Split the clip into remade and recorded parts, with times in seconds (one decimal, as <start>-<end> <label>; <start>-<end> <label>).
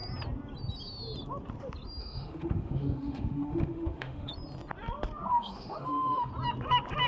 0.0-2.0 recorded; 2.0-4.3 remade; 4.3-5.3 recorded; 5.3-6.3 remade; 6.3-7.1 recorded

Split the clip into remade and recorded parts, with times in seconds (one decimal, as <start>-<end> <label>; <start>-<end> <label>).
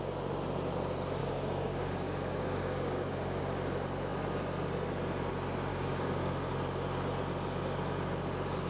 0.0-1.2 recorded; 1.2-3.4 remade; 3.4-5.7 recorded; 5.7-6.5 remade; 6.5-8.7 recorded